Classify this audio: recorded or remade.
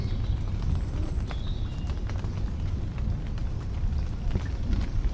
recorded